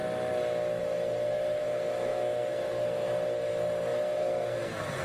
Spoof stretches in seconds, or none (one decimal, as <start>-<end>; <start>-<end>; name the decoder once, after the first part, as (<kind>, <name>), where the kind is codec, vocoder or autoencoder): 0.8-5.0 (codec, SNAC)